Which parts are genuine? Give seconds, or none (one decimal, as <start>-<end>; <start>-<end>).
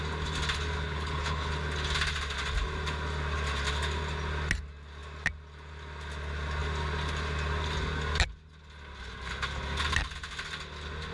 0.0-0.8; 1.5-11.1